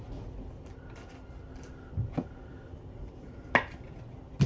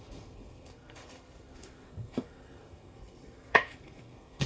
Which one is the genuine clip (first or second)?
first